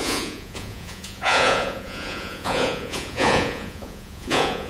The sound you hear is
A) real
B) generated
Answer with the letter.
B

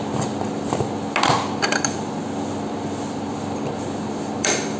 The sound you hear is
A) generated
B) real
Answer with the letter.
B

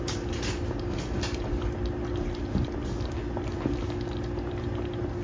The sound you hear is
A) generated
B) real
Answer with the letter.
B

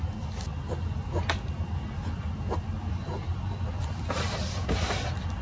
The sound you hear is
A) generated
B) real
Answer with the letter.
B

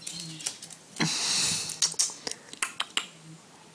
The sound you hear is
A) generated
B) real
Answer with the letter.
B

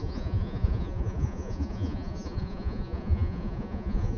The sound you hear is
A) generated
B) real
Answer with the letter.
A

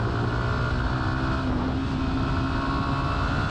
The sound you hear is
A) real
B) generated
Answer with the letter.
A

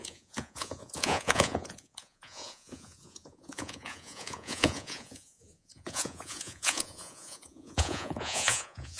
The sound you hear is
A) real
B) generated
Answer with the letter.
B